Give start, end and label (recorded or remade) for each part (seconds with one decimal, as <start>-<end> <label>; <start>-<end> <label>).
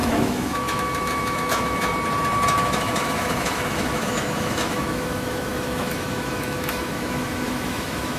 0.0-1.9 remade; 1.9-2.6 recorded; 2.6-8.2 remade